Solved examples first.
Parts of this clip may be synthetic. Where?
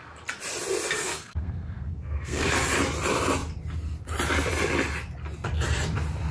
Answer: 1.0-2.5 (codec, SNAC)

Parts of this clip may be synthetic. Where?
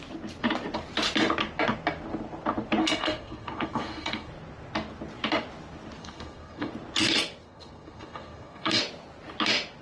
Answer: 2.8-4.3 (codec, SNAC); 6.0-6.7; 7.4-8.8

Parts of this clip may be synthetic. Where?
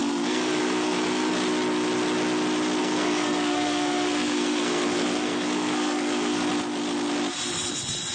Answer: 0.0-1.3 (codec, SNAC); 2.8-6.5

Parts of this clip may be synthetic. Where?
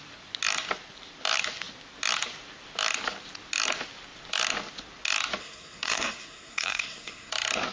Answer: 5.4-7.3 (codec, SNAC)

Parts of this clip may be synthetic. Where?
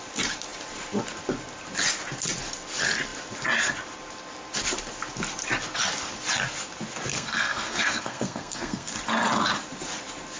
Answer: 7.1-8.9 (codec, SNAC)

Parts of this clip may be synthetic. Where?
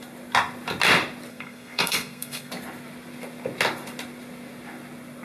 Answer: 1.3-2.5 (codec, SNAC)